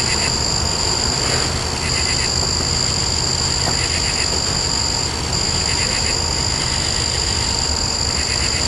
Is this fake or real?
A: real